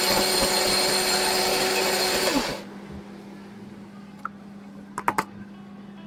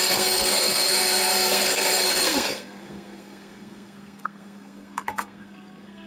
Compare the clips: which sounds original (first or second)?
first